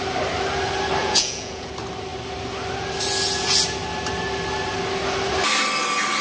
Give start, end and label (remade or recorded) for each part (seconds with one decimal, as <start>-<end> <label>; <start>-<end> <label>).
0.0-1.0 recorded; 1.0-1.7 remade; 1.7-6.2 recorded